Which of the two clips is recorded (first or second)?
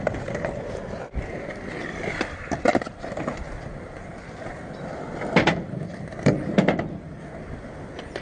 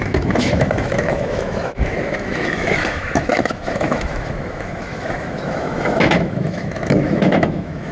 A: first